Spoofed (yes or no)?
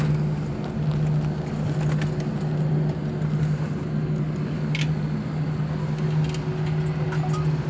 no